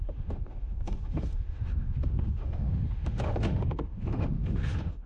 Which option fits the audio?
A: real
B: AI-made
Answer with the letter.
B